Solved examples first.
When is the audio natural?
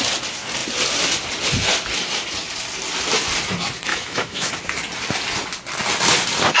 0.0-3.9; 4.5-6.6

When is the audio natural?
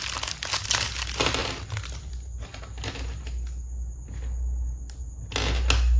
0.0-1.4; 2.6-6.0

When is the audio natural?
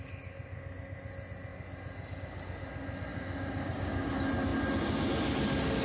0.0-3.1; 4.1-5.8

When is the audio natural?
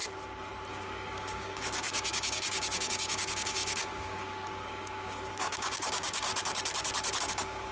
0.0-0.7; 6.3-7.2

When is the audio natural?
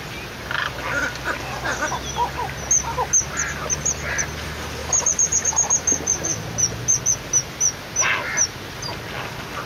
0.0-4.8; 5.5-9.7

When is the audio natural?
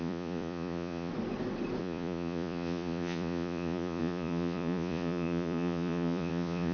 1.1-1.8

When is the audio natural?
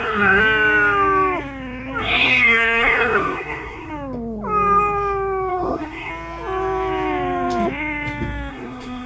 0.4-2.0; 3.9-5.5; 6.1-8.5